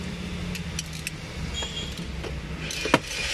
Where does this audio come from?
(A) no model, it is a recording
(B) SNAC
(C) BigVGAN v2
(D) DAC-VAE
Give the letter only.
A